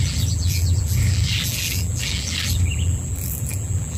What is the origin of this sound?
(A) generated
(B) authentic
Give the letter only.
A